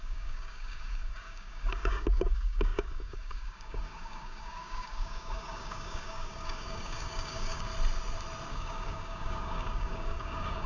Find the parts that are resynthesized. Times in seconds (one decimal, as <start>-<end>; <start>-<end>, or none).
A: 0.0-7.7; 8.5-10.7